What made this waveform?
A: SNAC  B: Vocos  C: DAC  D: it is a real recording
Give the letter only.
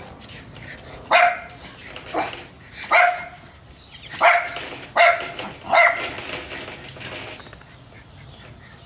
D